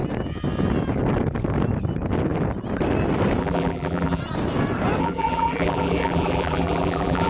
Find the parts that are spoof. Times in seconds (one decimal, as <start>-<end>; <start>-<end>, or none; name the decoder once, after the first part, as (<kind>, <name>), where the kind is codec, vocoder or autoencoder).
3.4-4.2 (vocoder, BigVGAN v2); 5.0-7.3